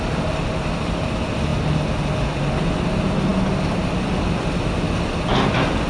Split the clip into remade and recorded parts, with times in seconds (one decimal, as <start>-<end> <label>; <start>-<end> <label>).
0.0-5.9 recorded